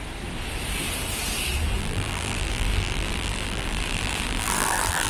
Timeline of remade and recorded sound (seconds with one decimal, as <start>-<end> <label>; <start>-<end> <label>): 0.0-1.8 recorded; 1.8-5.1 remade